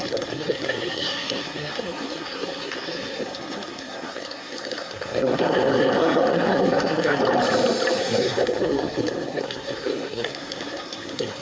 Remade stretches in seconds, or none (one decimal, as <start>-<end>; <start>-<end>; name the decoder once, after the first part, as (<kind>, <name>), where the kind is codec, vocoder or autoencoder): 0.0-7.2 (codec, SNAC); 8.0-11.4